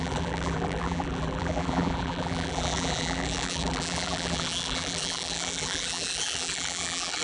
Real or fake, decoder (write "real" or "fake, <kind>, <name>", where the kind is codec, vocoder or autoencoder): fake, vocoder, BigVGAN v2